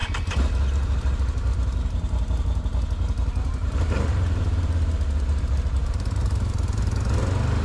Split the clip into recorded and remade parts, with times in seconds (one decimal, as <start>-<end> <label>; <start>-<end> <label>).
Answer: 0.0-5.8 recorded; 5.8-6.5 remade; 6.5-7.6 recorded